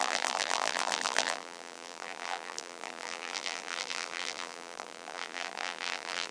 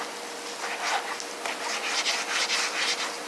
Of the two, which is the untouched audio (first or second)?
second